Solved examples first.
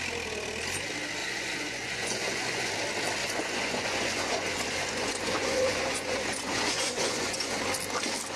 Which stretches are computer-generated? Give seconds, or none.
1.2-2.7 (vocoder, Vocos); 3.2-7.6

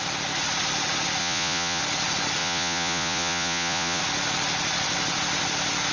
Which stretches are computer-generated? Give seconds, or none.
1.2-1.8 (vocoder, Vocos); 2.4-4.0